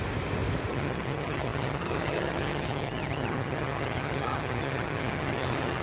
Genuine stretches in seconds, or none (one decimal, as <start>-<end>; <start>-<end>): 0.0-0.7